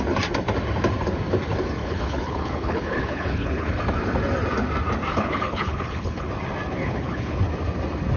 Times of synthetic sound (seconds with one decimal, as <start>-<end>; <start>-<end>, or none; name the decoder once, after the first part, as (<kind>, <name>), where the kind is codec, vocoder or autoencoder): 1.8-3.8 (codec, HILCodec); 5.1-6.3; 6.8-7.4